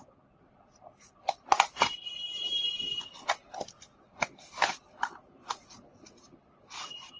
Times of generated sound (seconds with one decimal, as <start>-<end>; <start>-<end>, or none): none